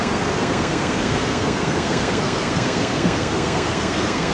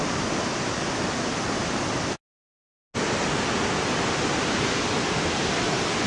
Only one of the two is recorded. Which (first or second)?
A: second